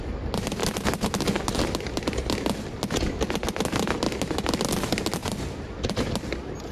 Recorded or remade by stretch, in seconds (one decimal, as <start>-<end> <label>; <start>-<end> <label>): 0.0-6.7 recorded

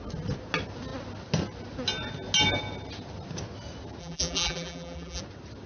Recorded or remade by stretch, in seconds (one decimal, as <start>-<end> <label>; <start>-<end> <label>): 0.0-4.0 recorded; 4.0-5.2 remade; 5.2-5.7 recorded

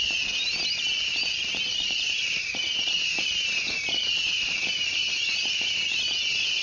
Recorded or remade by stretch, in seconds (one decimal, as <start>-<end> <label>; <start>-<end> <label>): 0.0-1.7 recorded; 1.7-5.7 remade; 5.7-6.6 recorded

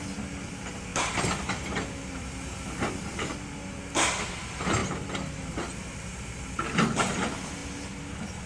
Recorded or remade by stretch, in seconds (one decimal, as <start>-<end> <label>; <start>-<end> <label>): 0.0-8.5 recorded

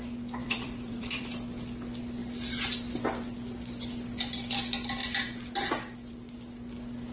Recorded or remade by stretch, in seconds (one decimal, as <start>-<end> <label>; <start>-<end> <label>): 0.0-0.4 recorded; 0.4-1.2 remade; 1.2-7.1 recorded

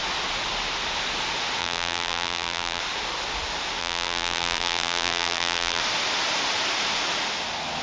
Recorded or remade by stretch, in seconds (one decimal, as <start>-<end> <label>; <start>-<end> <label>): 0.0-1.6 recorded; 1.6-2.8 remade; 2.8-3.8 recorded; 3.8-5.8 remade; 5.8-7.8 recorded